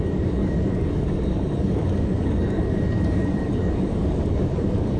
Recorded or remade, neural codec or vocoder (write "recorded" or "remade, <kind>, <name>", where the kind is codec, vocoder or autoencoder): remade, codec, DAC